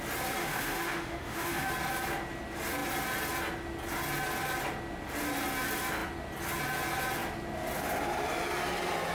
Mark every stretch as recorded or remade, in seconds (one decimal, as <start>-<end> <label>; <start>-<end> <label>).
0.0-0.4 recorded; 0.4-1.7 remade; 1.7-9.1 recorded